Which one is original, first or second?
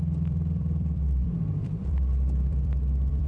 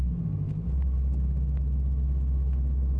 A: second